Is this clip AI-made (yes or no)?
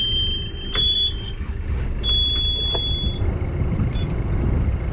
yes